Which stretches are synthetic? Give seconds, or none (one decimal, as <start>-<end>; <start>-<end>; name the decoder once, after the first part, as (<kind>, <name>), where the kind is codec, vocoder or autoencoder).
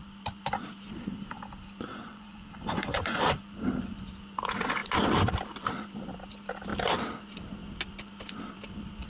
1.9-3.2 (vocoder, Vocos)